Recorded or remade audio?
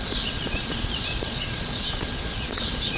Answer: remade